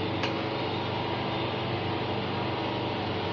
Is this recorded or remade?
recorded